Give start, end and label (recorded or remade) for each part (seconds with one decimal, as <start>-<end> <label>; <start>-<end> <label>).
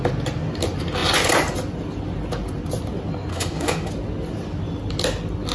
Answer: 0.0-3.3 recorded; 3.3-3.9 remade; 3.9-5.5 recorded